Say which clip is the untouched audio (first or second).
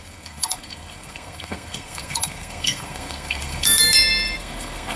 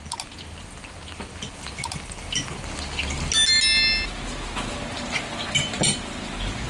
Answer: second